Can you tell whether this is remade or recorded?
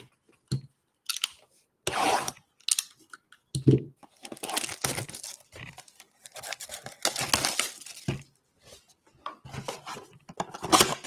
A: recorded